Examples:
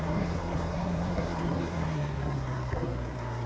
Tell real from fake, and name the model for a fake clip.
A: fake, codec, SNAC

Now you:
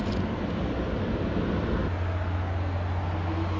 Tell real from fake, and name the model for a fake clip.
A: real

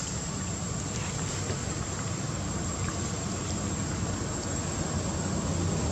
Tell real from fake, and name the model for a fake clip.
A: real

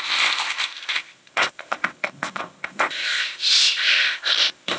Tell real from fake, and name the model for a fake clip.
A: fake, codec, ZipCodec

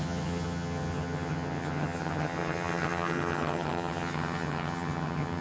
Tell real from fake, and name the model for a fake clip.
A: fake, vocoder, HiFi-GAN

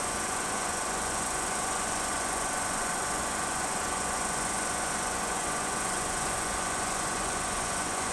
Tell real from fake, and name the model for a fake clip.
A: fake, vocoder, Vocos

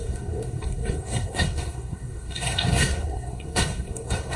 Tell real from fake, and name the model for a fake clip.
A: fake, codec, SNAC